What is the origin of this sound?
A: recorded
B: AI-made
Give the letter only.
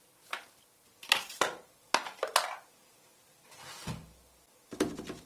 A